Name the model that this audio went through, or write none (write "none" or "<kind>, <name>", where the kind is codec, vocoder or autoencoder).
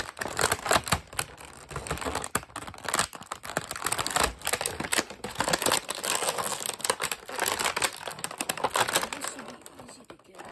none